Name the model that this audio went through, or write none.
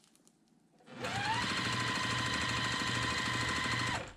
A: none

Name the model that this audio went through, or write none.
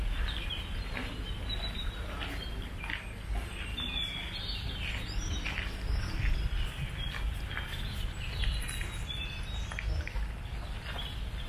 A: none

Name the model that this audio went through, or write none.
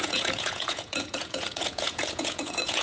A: vocoder, Vocos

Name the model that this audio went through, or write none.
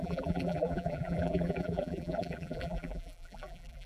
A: vocoder, BigVGAN v2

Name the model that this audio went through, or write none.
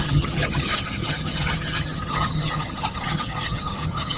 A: vocoder, HiFi-GAN